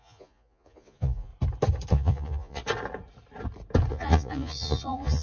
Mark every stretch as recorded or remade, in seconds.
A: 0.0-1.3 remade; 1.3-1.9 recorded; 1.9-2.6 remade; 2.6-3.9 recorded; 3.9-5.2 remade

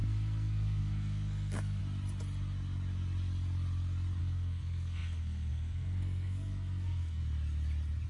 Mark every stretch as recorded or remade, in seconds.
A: 0.0-1.8 remade; 1.8-4.2 recorded; 4.2-7.2 remade; 7.2-8.1 recorded

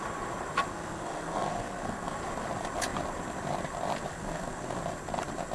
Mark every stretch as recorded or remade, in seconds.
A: 0.0-0.7 recorded; 0.7-2.2 remade; 2.2-4.1 recorded; 4.1-4.8 remade; 4.8-5.5 recorded

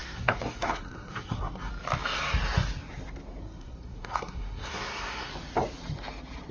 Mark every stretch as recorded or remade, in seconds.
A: 0.0-1.7 remade; 1.7-3.4 recorded; 3.4-5.3 remade; 5.3-6.5 recorded

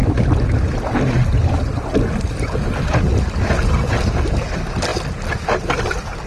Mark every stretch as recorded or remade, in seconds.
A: 0.0-6.3 recorded